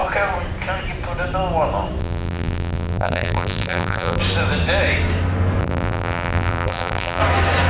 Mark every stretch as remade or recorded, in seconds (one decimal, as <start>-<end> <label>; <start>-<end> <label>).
0.0-2.0 recorded; 2.0-4.2 remade; 4.2-5.6 recorded; 5.6-7.2 remade; 7.2-7.7 recorded